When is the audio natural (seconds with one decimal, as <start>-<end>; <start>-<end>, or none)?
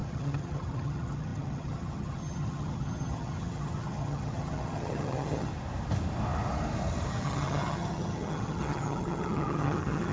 5.5-7.1